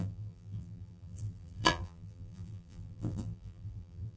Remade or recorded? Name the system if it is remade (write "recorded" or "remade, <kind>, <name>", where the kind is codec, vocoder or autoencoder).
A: remade, vocoder, BigVGAN v2